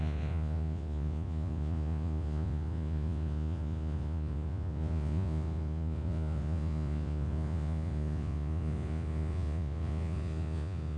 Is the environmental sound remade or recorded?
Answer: remade